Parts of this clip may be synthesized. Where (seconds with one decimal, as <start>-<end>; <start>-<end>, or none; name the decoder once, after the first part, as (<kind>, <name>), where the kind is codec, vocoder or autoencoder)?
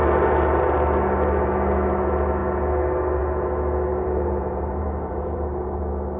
3.9-5.8 (vocoder, BigVGAN v2)